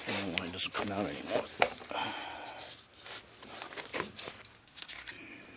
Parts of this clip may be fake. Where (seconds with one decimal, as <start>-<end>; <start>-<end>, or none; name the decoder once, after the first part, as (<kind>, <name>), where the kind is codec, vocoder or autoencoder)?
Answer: 4.6-5.1 (codec, SNAC)